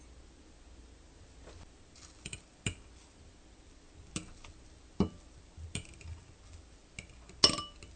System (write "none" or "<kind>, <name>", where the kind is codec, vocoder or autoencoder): none